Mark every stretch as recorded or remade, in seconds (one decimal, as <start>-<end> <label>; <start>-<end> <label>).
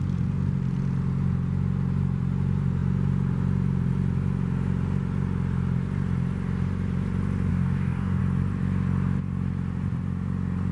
0.0-7.5 recorded; 7.5-8.2 remade; 8.2-10.7 recorded